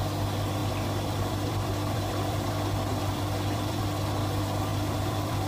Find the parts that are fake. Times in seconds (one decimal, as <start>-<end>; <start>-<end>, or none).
0.6-2.5; 2.9-3.8; 4.7-5.5